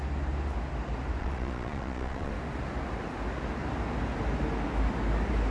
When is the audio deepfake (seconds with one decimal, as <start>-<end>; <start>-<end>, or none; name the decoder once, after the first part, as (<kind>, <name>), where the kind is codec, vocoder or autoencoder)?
1.2-2.3 (vocoder, Vocos)

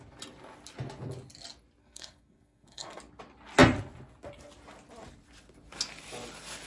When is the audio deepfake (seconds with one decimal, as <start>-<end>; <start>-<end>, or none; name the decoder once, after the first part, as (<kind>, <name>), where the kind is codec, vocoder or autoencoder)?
1.8-3.0 (codec, SNAC)

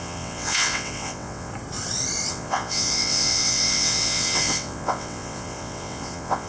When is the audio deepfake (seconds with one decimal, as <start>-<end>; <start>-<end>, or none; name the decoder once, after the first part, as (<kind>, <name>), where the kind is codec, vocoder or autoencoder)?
0.0-1.5 (vocoder, WaveNeXt); 2.3-6.5

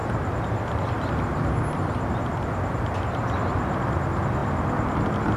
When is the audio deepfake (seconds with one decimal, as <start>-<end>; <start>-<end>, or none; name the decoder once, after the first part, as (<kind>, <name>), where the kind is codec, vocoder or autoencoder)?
none